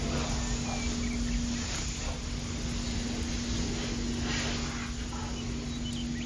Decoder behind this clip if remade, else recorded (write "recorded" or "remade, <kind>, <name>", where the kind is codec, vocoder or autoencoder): recorded